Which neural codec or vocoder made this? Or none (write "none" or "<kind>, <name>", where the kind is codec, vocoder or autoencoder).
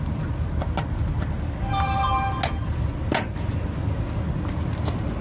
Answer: none